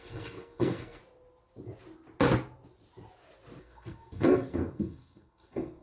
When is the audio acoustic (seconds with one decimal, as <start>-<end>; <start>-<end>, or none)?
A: 1.0-3.6